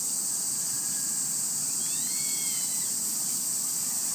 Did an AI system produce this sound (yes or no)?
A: no